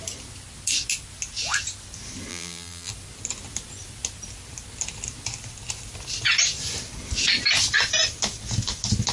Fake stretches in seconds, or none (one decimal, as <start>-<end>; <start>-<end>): 2.3-2.9

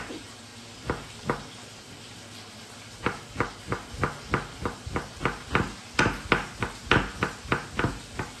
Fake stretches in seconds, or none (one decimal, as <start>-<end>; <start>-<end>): none

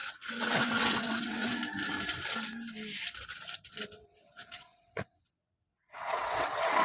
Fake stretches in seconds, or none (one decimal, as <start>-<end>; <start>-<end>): 0.0-1.6; 4.3-6.8

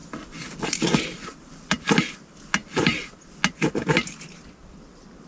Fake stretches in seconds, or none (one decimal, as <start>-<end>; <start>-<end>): 0.0-2.0; 2.6-3.2

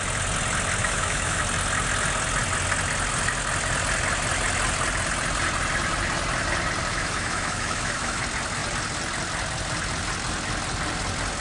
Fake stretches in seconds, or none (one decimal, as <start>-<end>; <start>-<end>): 0.8-1.4; 6.9-8.2

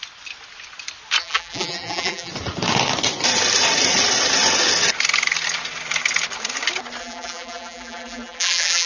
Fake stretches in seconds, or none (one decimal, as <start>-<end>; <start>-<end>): 1.2-2.3; 7.0-8.9

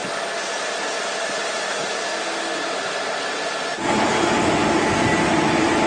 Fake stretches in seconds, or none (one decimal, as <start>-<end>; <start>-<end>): none

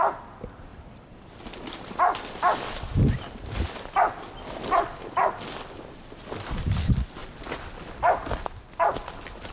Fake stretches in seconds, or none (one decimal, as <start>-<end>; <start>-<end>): none